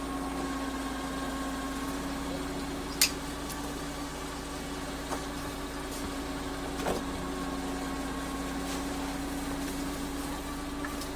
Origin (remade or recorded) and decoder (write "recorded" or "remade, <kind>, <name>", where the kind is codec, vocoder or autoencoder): recorded